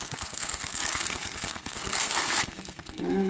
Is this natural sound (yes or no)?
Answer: no